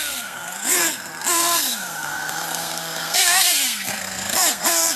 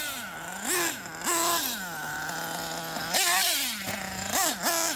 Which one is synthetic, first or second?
first